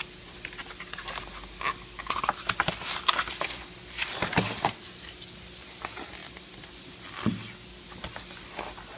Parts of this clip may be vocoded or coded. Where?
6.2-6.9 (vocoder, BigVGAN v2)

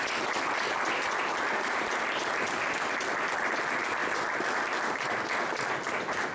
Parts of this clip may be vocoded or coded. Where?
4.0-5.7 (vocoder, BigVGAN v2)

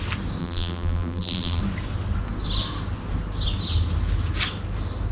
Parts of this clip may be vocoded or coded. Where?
0.4-1.6 (vocoder, BigVGAN v2)

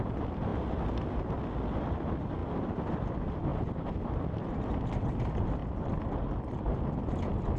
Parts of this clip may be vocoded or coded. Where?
2.4-3.0 (vocoder, BigVGAN v2); 3.5-4.4; 5.6-7.0

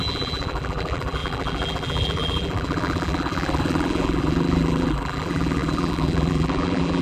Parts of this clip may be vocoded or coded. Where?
0.0-7.0 (vocoder, BigVGAN v2)

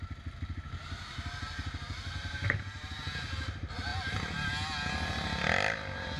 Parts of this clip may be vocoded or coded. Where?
2.2-3.0 (vocoder, BigVGAN v2)